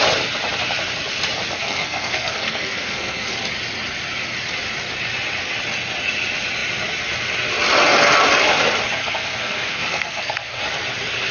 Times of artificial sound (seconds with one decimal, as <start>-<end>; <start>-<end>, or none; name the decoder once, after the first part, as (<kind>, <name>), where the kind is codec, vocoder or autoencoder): 1.6-3.3 (codec, SNAC); 9.0-10.6